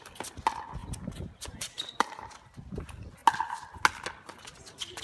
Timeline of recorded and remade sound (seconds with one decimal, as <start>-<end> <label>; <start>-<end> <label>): 0.0-0.8 recorded; 0.8-2.7 remade; 2.7-5.0 recorded